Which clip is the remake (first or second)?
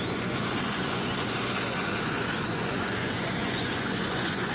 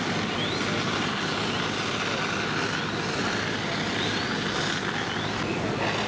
first